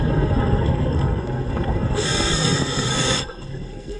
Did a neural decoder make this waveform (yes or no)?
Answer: yes